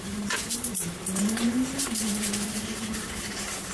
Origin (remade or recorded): remade